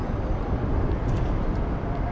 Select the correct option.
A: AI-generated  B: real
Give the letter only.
B